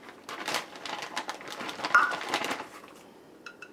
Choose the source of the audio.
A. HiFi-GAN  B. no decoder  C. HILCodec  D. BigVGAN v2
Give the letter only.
D